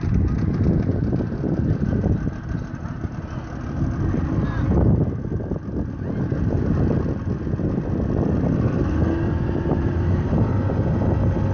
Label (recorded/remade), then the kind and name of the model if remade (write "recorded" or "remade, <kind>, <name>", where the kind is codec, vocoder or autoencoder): recorded